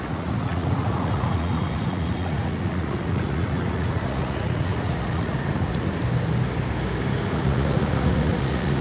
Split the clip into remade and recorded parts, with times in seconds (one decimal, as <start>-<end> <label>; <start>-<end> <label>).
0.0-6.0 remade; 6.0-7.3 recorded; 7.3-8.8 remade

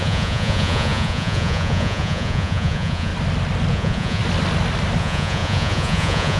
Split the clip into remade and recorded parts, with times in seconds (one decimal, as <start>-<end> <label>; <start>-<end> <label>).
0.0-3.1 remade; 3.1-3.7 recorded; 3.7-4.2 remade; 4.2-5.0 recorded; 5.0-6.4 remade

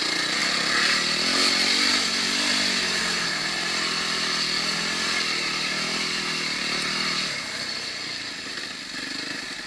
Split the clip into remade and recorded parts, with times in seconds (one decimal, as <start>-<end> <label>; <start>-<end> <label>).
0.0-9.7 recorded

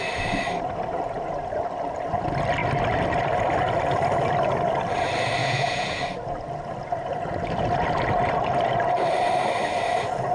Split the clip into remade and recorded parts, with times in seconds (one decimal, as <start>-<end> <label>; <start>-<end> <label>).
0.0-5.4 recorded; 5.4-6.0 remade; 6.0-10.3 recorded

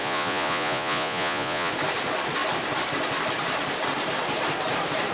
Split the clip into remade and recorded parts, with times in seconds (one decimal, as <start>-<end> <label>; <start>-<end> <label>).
0.0-1.7 remade; 1.7-5.1 recorded

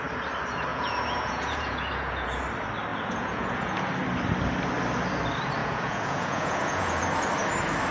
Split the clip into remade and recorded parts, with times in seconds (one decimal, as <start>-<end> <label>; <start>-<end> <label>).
0.0-0.7 recorded; 0.7-2.4 remade; 2.4-2.9 recorded; 2.9-3.9 remade; 3.9-5.6 recorded; 5.6-7.0 remade; 7.0-7.9 recorded

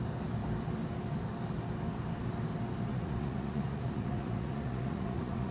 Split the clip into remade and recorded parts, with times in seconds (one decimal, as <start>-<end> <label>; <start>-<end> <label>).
0.0-2.9 recorded; 2.9-5.5 remade

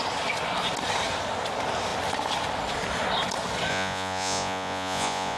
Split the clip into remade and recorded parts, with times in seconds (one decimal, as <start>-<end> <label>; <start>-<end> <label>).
0.0-3.7 recorded; 3.7-5.4 remade